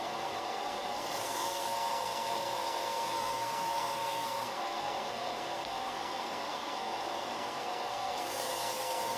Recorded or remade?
remade